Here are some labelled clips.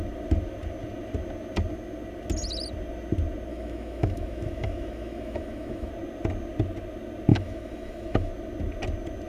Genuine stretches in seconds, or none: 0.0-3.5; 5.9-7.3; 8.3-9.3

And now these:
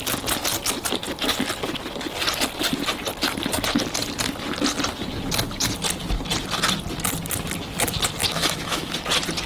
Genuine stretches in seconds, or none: 0.0-8.2; 9.0-9.5

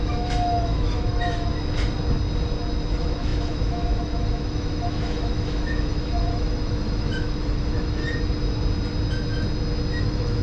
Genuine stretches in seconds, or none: 1.5-2.9; 8.0-10.0

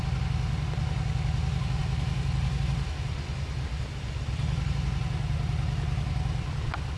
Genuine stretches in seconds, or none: 0.0-7.0

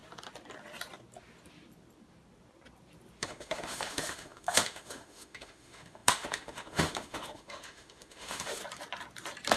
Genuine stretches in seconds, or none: 0.0-3.2; 8.6-9.6

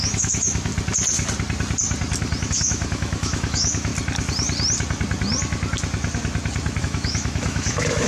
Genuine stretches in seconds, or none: 0.7-2.5; 3.9-6.8

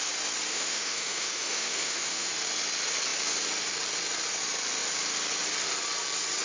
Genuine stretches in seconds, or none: 0.0-0.5; 2.3-6.4